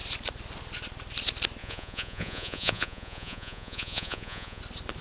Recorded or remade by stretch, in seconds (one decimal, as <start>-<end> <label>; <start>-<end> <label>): 0.0-1.6 recorded; 1.6-4.6 remade; 4.6-5.0 recorded